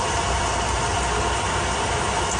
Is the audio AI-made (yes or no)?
no